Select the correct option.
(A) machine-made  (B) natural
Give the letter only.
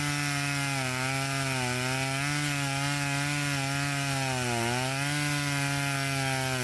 B